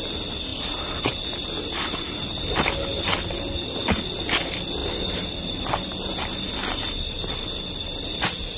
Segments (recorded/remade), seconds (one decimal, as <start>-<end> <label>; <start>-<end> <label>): 0.0-4.8 recorded; 4.8-5.7 remade; 5.7-8.6 recorded